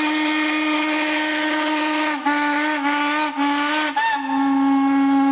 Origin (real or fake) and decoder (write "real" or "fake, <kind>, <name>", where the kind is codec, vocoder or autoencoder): real